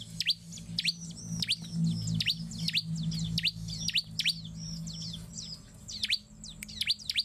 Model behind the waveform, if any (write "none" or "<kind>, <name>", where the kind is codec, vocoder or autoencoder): none